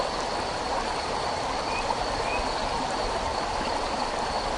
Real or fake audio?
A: real